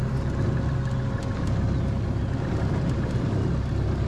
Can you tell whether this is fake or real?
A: real